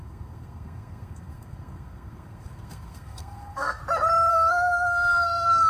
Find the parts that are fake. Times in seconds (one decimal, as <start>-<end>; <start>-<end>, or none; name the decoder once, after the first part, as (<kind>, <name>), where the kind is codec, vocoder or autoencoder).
0.0-3.8 (codec, SNAC); 4.3-5.7